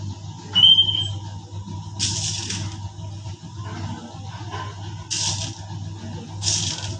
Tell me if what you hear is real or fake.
real